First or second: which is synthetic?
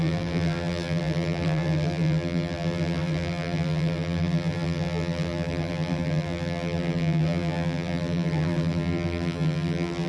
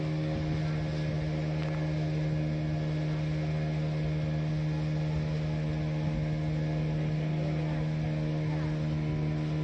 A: first